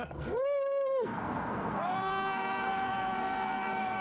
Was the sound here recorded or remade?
remade